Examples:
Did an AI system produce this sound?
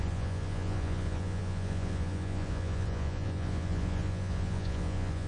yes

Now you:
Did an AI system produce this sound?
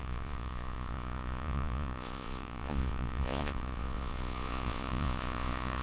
yes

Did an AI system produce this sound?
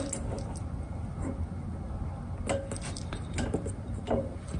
no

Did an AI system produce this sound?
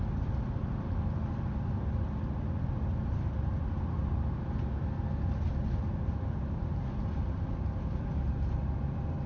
no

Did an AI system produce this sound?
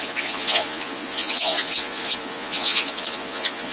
yes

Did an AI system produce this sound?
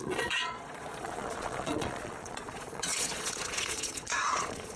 yes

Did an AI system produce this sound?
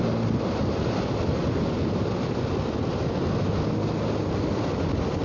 no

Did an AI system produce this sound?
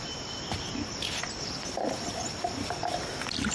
no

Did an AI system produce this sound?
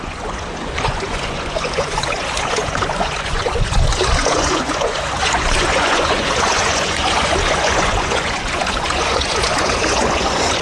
yes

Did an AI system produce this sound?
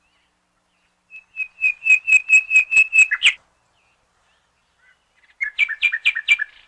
no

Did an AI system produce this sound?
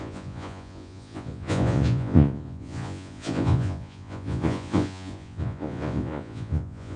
yes